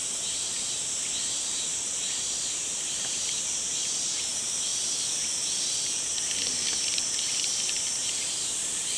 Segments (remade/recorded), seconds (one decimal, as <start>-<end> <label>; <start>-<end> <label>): 0.0-4.7 remade; 4.7-8.0 recorded; 8.0-9.0 remade